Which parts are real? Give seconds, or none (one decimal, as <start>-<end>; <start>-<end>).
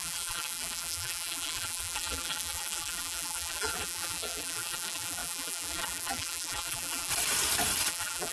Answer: 7.1-7.9